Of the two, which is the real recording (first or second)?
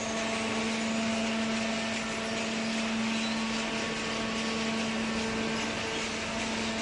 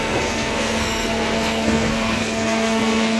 first